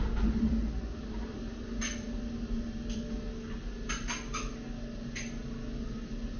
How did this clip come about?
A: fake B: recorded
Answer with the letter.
B